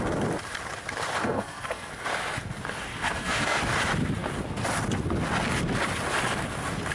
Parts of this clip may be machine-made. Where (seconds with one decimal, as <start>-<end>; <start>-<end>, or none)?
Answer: 1.2-1.9; 2.9-3.6